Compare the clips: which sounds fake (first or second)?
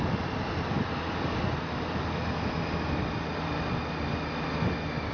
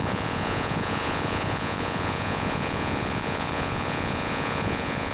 second